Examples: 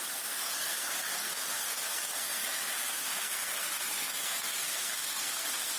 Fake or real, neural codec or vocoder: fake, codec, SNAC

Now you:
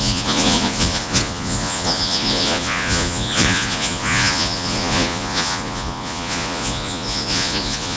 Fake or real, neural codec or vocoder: fake, vocoder, Vocos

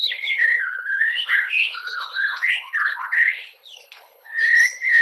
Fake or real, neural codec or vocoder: fake, codec, HILCodec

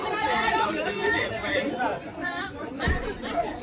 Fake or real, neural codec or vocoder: fake, vocoder, Vocos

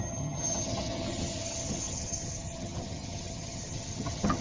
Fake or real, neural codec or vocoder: fake, vocoder, HiFi-GAN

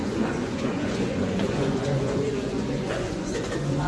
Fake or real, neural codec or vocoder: fake, vocoder, Vocos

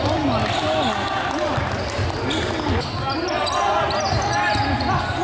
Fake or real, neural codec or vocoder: real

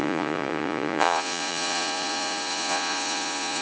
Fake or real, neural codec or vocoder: fake, vocoder, Vocos